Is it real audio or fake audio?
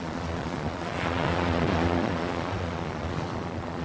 fake